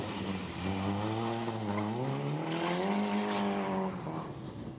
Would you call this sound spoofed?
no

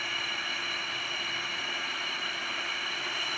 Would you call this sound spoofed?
no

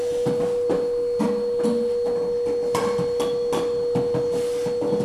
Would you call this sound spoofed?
no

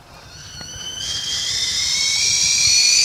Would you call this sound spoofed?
no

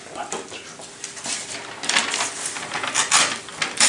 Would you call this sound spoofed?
no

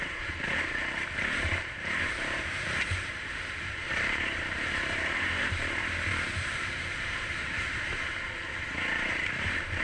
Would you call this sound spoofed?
yes